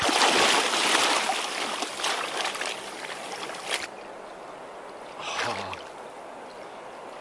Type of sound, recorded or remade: recorded